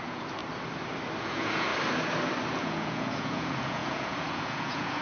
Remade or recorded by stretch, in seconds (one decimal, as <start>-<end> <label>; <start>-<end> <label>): 0.0-0.4 remade; 0.4-1.2 recorded; 1.2-1.7 remade; 1.7-2.5 recorded; 2.5-5.0 remade